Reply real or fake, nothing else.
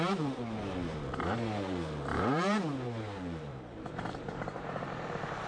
fake